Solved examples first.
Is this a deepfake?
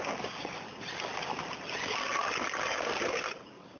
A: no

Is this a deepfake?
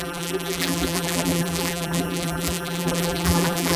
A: yes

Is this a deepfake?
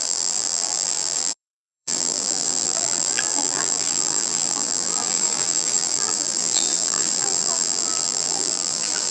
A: yes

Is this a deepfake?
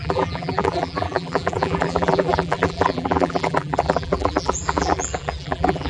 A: yes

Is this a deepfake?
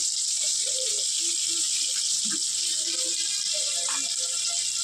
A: yes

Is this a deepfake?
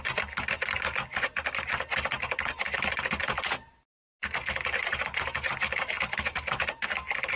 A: no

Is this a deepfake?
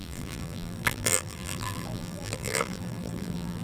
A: yes